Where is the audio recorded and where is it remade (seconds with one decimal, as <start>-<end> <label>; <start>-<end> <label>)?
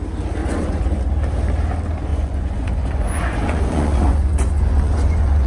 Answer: 0.0-0.4 recorded; 0.4-1.0 remade; 1.0-2.1 recorded; 2.1-5.5 remade